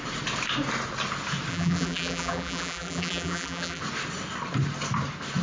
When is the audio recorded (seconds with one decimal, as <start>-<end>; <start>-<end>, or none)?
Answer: 0.0-1.5; 3.8-5.4